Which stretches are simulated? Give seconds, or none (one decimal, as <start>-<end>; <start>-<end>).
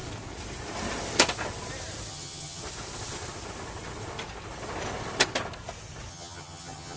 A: 2.1-2.6; 6.1-7.0